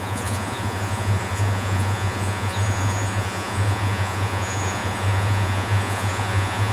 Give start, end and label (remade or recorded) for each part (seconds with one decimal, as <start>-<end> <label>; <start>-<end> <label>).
0.0-6.7 remade

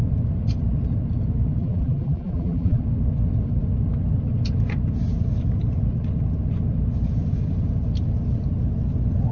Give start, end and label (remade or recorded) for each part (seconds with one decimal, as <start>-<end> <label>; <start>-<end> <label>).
0.0-1.6 recorded; 1.6-2.8 remade; 2.8-9.3 recorded

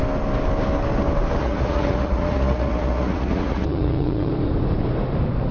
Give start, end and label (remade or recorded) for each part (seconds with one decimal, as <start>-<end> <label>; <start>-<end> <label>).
0.0-1.4 recorded; 1.4-4.3 remade; 4.3-5.5 recorded

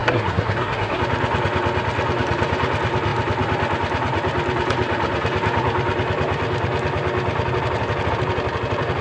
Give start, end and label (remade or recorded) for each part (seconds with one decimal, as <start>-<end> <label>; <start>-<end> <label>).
0.0-1.0 remade; 1.0-9.0 recorded

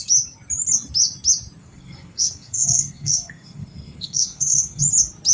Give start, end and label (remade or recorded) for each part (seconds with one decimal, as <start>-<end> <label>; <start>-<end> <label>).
0.0-1.6 recorded; 1.6-4.8 remade; 4.8-5.3 recorded